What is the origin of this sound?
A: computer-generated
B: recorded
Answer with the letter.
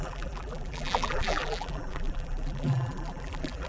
A